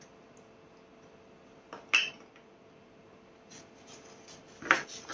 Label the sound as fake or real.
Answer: real